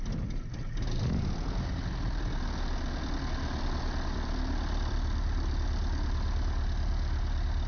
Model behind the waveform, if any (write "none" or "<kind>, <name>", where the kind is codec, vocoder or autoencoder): none